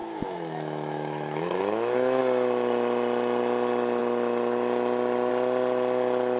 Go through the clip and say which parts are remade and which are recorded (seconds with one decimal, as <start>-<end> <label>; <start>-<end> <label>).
0.0-2.2 remade; 2.2-6.4 recorded